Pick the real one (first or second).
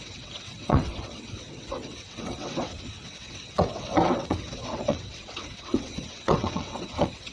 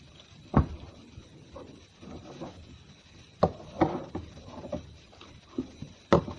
second